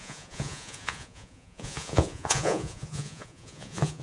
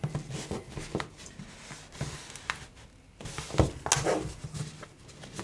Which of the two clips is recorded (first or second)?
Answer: second